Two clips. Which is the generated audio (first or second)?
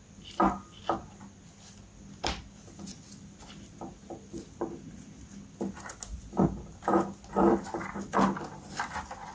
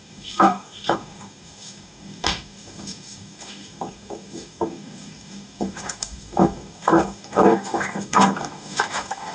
second